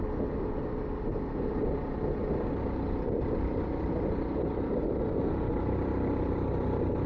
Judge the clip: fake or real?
real